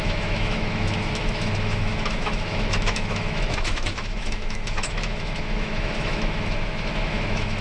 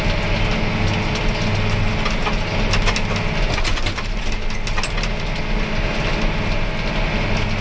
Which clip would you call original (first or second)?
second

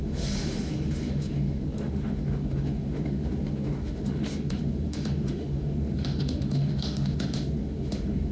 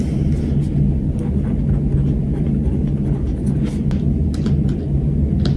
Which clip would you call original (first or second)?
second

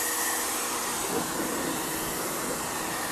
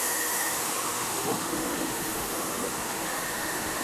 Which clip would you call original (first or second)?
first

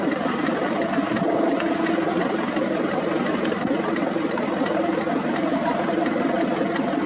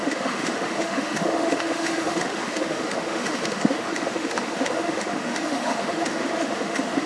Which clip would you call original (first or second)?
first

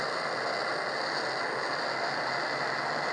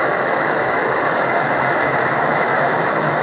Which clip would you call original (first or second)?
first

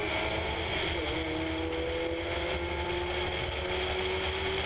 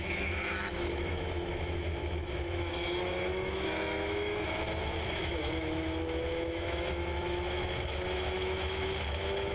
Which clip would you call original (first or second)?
first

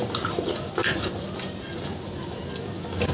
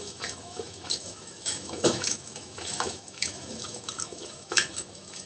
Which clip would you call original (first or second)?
first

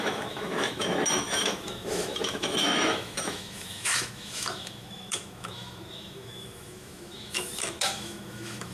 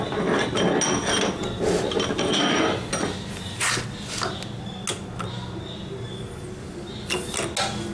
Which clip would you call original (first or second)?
second